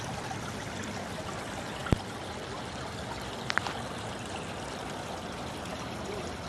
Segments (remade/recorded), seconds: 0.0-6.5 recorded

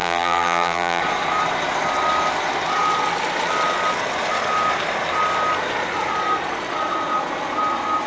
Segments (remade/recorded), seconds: 0.0-1.0 remade; 1.0-8.1 recorded

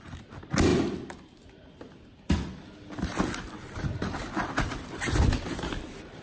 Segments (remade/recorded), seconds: 0.0-6.2 recorded

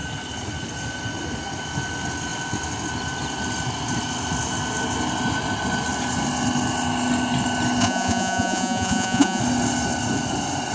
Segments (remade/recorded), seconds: 0.0-7.8 recorded; 7.8-9.4 remade; 9.4-10.7 recorded

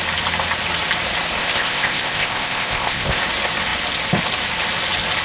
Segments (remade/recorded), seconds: 0.0-1.4 recorded; 1.4-3.2 remade; 3.2-5.2 recorded

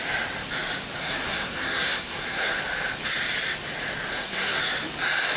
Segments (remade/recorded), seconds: 0.0-1.0 recorded; 1.0-2.6 remade; 2.6-4.1 recorded; 4.1-4.6 remade; 4.6-5.4 recorded

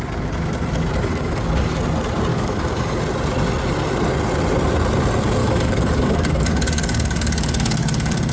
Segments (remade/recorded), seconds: 0.0-1.1 recorded; 1.1-1.7 remade; 1.7-2.3 recorded; 2.3-3.0 remade; 3.0-5.4 recorded; 5.4-8.3 remade